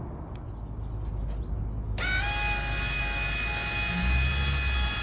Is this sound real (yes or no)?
yes